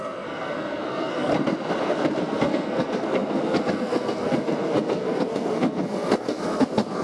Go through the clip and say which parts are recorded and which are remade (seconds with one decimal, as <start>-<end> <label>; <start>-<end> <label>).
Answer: 0.0-1.3 remade; 1.3-1.8 recorded; 1.8-7.0 remade